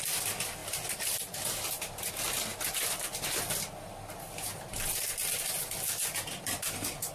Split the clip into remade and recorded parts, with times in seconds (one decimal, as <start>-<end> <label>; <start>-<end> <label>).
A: 0.0-7.1 recorded